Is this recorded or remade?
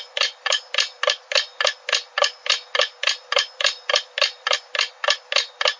recorded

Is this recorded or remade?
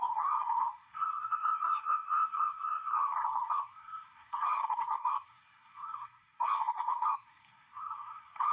remade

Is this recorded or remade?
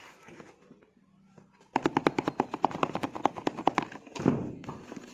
recorded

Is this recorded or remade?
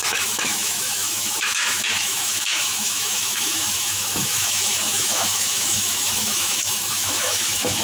remade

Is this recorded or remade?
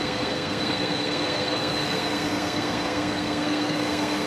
remade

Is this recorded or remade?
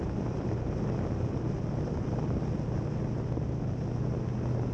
recorded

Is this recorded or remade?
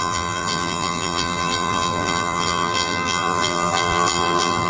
remade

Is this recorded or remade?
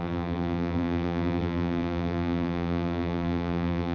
remade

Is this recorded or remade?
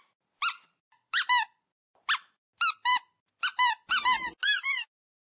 recorded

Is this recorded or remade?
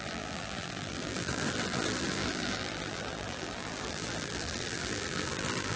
remade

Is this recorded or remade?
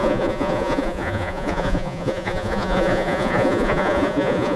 remade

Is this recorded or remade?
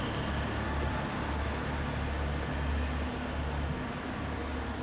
recorded